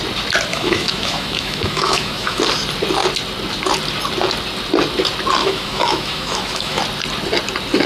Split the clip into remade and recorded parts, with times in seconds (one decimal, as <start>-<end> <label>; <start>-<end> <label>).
0.0-0.5 recorded; 0.5-2.4 remade; 2.4-5.4 recorded; 5.4-6.8 remade; 6.8-7.9 recorded